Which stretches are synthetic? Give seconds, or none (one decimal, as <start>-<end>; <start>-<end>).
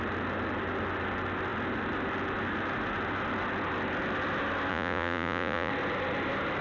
4.7-5.7